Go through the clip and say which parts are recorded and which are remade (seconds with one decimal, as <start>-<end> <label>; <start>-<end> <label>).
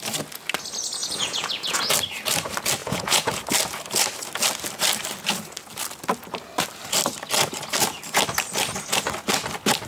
0.0-1.0 recorded; 1.0-1.9 remade; 1.9-2.8 recorded; 2.8-3.3 remade; 3.3-9.9 recorded